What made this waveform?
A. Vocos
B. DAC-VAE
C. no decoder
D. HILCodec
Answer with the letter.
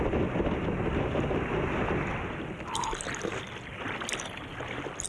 C